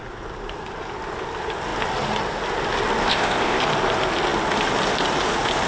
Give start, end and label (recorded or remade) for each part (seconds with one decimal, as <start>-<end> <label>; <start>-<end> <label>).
0.0-3.0 recorded; 3.0-3.6 remade; 3.6-5.7 recorded